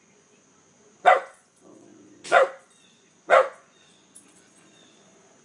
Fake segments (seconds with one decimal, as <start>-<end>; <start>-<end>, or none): 0.0-5.4